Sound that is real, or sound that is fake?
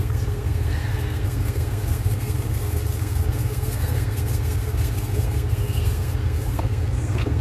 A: fake